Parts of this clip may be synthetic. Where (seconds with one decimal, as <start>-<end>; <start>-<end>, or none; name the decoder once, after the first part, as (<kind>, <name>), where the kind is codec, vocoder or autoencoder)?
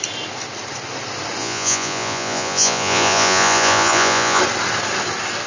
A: 1.4-4.4 (vocoder, Vocos)